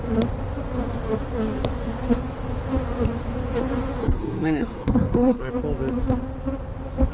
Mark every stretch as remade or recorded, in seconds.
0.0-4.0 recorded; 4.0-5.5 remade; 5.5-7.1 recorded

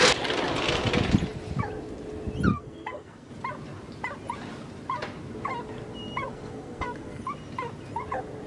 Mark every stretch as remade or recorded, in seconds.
0.0-2.5 recorded; 2.5-3.3 remade; 3.3-6.3 recorded; 6.3-7.2 remade; 7.2-8.5 recorded

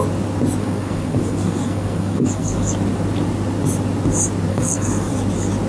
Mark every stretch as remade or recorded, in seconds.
0.0-0.6 recorded; 0.6-2.7 remade; 2.7-4.5 recorded; 4.5-5.2 remade; 5.2-5.7 recorded

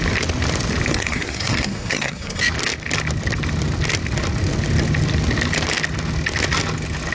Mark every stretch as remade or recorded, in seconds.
0.0-0.9 recorded; 0.9-2.4 remade; 2.4-7.1 recorded

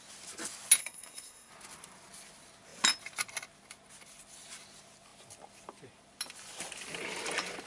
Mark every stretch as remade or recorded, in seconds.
0.0-0.8 recorded; 0.8-1.5 remade; 1.5-7.7 recorded

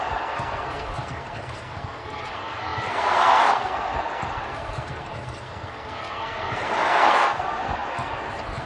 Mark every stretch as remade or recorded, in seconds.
0.0-8.7 remade